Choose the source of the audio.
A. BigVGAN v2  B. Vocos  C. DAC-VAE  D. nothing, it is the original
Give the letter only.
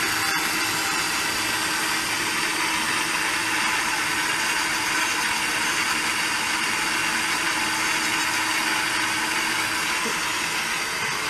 D